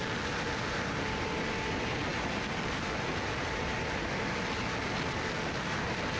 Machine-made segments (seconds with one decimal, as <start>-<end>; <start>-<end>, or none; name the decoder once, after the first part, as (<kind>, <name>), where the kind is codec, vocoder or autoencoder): none